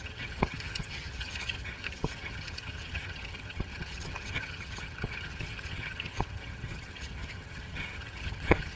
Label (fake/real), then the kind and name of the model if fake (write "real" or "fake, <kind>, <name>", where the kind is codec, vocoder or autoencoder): fake, vocoder, HiFi-GAN